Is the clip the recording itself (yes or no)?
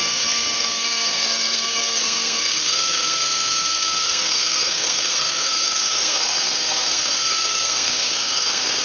no